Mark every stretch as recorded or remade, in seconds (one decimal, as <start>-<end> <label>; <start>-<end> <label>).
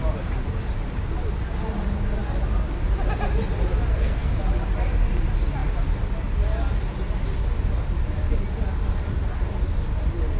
0.0-3.9 recorded; 3.9-4.4 remade; 4.4-10.4 recorded